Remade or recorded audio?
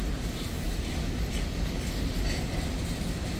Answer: recorded